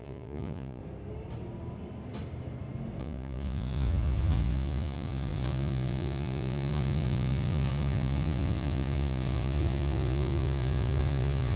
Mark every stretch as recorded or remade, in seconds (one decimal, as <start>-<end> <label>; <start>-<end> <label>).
0.0-0.8 remade; 0.8-3.0 recorded; 3.0-11.6 remade